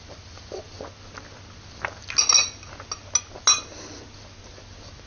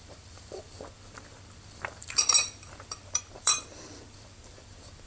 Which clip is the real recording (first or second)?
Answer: first